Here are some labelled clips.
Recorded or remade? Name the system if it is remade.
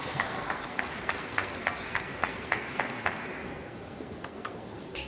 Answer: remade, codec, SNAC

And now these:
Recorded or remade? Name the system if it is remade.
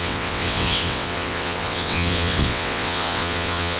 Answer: remade, vocoder, WaveNeXt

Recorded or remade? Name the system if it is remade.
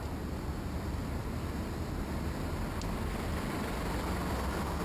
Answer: recorded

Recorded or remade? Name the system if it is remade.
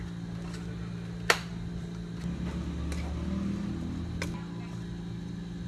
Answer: recorded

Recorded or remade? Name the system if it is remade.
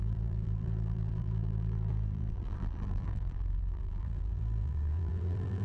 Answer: remade, vocoder, BigVGAN v2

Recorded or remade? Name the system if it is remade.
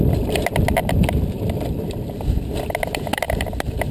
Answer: remade, vocoder, BigVGAN v2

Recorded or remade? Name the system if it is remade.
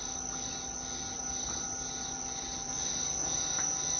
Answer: recorded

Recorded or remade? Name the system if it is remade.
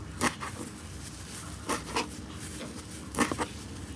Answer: recorded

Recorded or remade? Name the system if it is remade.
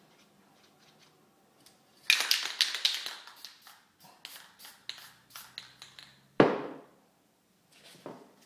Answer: recorded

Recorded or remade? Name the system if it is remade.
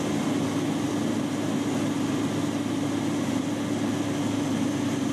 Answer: recorded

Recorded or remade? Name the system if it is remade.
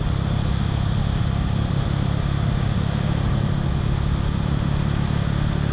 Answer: recorded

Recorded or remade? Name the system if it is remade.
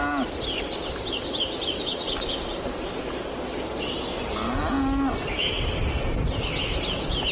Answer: recorded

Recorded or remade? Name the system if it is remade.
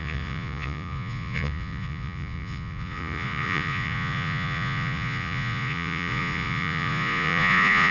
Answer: remade, vocoder, Vocos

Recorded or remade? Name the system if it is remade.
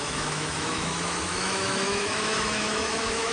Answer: remade, autoencoder, DAC-VAE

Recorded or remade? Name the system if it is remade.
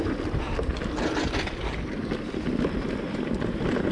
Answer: recorded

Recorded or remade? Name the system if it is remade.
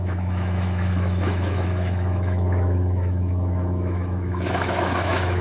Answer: remade, autoencoder, DAC-VAE